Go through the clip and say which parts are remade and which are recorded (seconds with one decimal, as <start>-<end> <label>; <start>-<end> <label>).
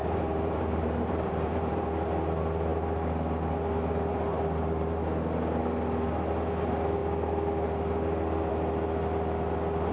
0.0-1.9 remade; 1.9-9.9 recorded